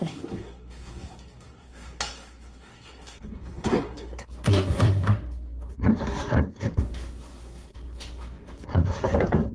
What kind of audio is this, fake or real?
fake